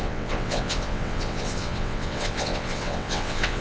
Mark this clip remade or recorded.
remade